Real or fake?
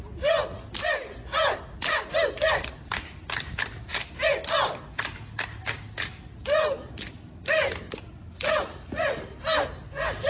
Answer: real